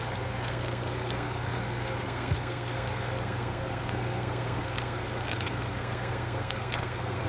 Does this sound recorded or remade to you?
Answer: remade